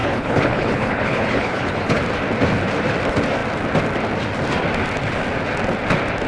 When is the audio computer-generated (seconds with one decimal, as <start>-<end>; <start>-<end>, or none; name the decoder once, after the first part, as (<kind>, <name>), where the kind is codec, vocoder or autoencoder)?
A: 0.0-2.0 (codec, HILCodec)